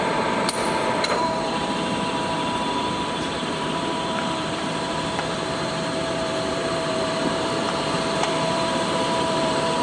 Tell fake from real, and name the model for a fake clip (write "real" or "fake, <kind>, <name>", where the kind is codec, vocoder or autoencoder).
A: fake, vocoder, BigVGAN v2